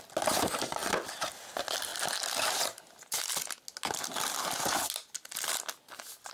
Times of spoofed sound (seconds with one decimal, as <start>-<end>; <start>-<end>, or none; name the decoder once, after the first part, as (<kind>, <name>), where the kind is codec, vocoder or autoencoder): none